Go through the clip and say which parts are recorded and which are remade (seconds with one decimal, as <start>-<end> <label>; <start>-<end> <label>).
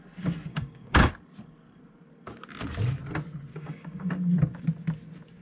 0.0-0.5 recorded; 0.5-1.1 remade; 1.1-3.5 recorded; 3.5-4.1 remade; 4.1-5.4 recorded